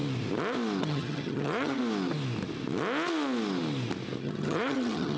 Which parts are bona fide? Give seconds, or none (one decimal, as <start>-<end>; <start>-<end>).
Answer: 0.0-0.8; 1.8-4.2